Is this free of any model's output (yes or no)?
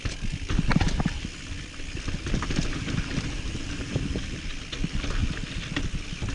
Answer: yes